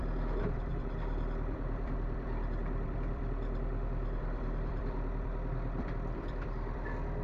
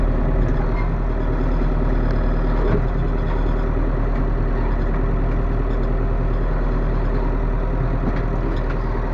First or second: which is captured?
second